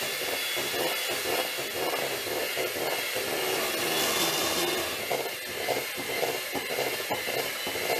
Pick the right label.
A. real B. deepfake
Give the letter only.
A